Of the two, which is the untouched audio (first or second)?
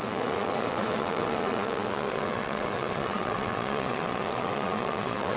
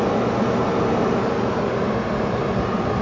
second